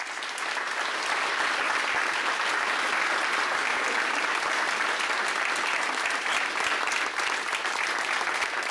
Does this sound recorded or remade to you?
recorded